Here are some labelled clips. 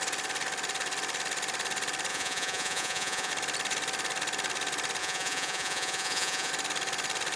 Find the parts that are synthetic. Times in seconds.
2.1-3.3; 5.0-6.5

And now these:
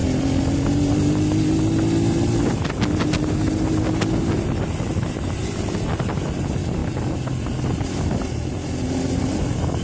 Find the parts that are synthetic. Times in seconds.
none

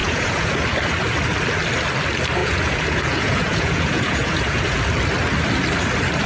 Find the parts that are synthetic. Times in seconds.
0.0-0.5; 2.4-4.8

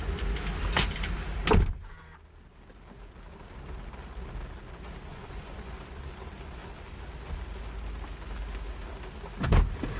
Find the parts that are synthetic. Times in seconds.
5.1-5.7

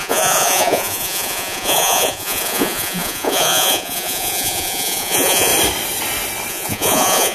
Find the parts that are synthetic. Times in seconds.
0.0-5.5; 6.5-7.3

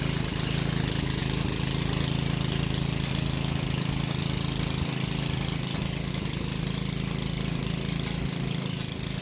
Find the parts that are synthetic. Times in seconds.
none